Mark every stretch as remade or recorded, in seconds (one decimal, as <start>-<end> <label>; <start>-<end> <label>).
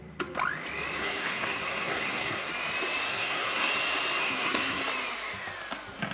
0.0-1.0 recorded; 1.0-2.5 remade; 2.5-3.1 recorded; 3.1-3.7 remade; 3.7-4.2 recorded; 4.2-4.8 remade; 4.8-6.1 recorded